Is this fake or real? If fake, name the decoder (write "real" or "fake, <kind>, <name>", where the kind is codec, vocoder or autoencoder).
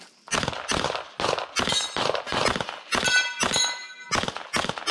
real